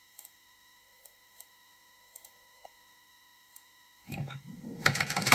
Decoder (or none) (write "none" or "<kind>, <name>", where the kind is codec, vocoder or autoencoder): autoencoder, DAC-VAE